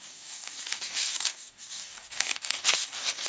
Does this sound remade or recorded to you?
remade